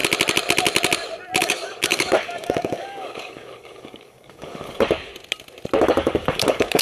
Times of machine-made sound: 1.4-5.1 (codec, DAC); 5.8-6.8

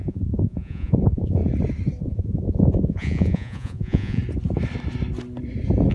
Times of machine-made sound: 0.0-1.4 (vocoder, Vocos); 2.0-4.2

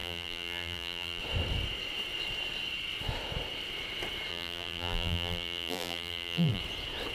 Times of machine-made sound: 0.0-1.2 (vocoder, BigVGAN v2); 4.3-6.6

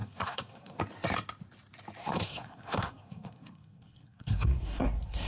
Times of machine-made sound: 0.0-0.8 (codec, SNAC); 2.0-5.3

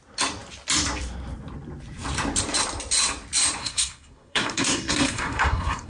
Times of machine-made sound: 3.6-5.9 (codec, SNAC)

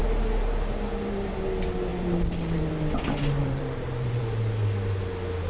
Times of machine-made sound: 3.4-4.2 (vocoder, BigVGAN v2)

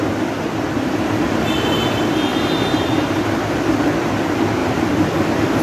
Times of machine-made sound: 2.3-3.2 (vocoder, BigVGAN v2); 4.6-5.6